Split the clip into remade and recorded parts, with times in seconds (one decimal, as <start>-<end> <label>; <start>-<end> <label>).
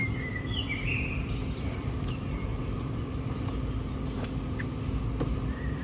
0.0-3.5 remade; 3.5-5.8 recorded